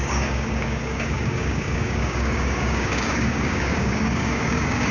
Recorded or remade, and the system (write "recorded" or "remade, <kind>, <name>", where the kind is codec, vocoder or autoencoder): remade, codec, DAC